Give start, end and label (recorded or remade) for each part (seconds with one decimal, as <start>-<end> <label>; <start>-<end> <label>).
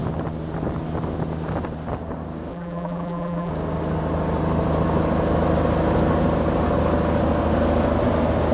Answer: 0.0-2.5 recorded; 2.5-3.5 remade; 3.5-8.5 recorded